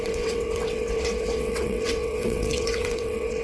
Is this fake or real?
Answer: fake